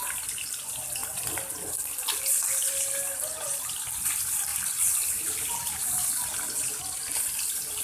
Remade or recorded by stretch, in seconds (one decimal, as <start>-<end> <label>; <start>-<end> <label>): 0.0-1.0 recorded; 1.0-1.5 remade; 1.5-4.5 recorded; 4.5-5.2 remade; 5.2-7.8 recorded